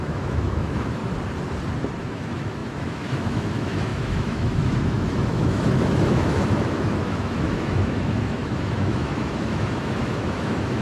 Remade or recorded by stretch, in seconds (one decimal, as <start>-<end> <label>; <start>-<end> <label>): 0.0-1.0 remade; 1.0-2.0 recorded; 2.0-10.8 remade

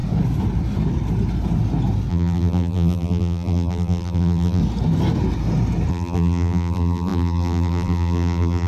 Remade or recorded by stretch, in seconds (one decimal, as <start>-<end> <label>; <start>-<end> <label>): 0.0-2.1 recorded; 2.1-4.6 remade; 4.6-5.9 recorded; 5.9-8.7 remade